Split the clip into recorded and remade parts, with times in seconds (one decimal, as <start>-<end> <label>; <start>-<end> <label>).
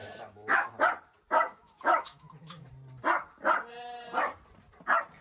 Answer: 0.0-0.7 remade; 0.7-1.5 recorded; 1.5-2.7 remade; 2.7-5.2 recorded